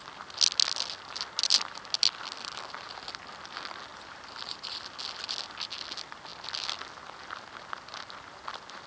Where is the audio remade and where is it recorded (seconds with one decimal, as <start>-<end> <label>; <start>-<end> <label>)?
0.0-3.9 recorded; 3.9-4.7 remade; 4.7-8.9 recorded